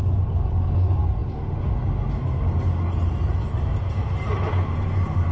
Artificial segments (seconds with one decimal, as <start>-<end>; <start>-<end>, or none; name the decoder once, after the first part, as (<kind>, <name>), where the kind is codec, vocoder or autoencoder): none